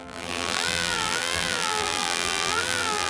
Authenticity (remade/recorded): remade